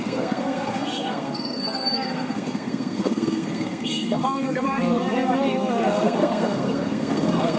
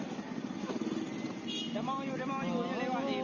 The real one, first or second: second